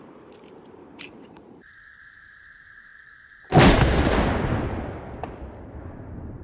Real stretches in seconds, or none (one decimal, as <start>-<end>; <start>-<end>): 2.9-5.6